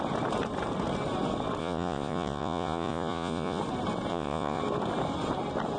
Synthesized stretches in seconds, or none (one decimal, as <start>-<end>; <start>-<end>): 1.6-3.6; 4.1-4.6